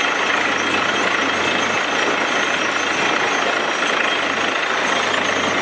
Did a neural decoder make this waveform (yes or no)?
no